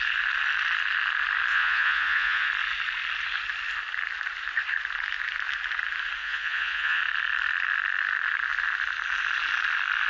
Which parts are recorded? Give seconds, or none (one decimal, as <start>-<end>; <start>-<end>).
0.0-1.5; 2.5-6.2; 7.0-10.1